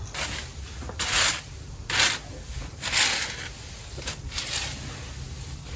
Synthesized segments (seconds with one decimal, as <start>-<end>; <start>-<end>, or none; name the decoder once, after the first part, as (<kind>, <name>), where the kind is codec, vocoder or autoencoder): none